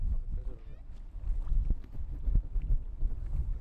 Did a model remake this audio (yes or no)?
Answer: no